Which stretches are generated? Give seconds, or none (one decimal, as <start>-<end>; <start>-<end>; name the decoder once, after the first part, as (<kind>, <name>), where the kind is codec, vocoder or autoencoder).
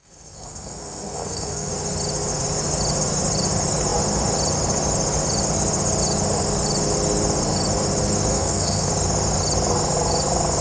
0.0-1.7 (codec, SNAC); 8.3-8.9